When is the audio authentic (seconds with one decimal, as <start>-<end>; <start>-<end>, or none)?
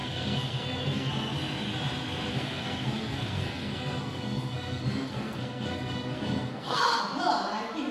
1.1-2.3; 7.0-7.9